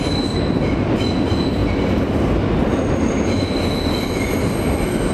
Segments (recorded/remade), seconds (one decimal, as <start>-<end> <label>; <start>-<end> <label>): 0.0-5.1 recorded